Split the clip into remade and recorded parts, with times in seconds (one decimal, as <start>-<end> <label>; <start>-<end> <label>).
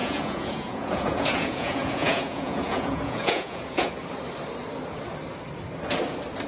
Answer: 0.0-3.9 remade; 3.9-6.5 recorded